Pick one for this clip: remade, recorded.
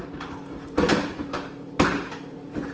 recorded